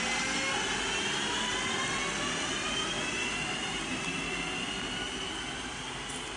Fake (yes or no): no